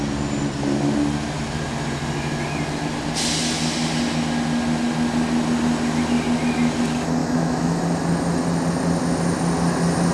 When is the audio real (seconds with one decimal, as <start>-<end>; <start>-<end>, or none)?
0.0-7.2; 7.8-10.1